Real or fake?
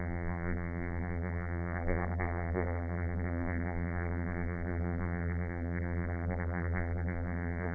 fake